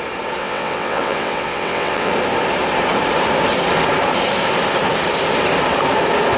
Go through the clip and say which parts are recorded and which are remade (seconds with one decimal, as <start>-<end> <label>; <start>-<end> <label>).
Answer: 0.0-0.4 recorded; 0.4-2.1 remade; 2.1-6.4 recorded